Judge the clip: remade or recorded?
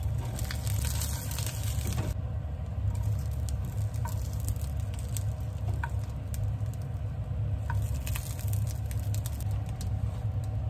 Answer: recorded